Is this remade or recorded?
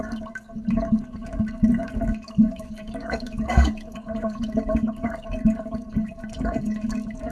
remade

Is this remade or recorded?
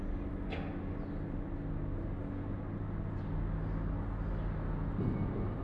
recorded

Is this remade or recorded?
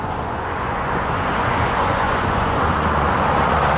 remade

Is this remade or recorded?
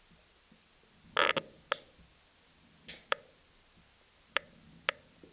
recorded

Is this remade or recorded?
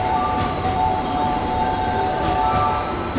remade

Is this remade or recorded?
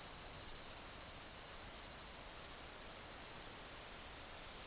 recorded